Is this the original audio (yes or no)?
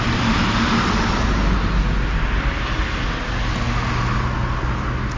yes